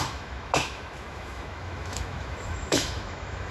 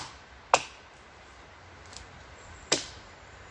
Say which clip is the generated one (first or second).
first